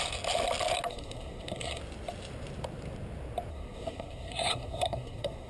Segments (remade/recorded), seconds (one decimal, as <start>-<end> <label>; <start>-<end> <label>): 0.0-0.9 recorded; 0.9-1.8 remade; 1.8-3.5 recorded; 3.5-5.5 remade